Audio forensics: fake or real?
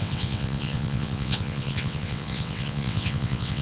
fake